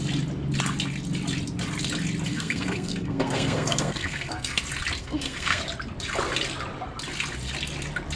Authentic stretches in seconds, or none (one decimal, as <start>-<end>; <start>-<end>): 0.0-2.3; 4.6-5.0; 5.6-8.2